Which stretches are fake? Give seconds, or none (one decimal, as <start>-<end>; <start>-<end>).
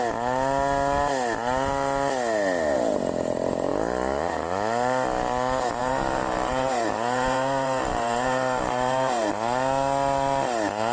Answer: 5.8-9.3